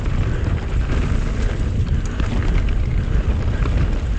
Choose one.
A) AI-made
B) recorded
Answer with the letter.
B